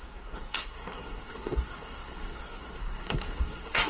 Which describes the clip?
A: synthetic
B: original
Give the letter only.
A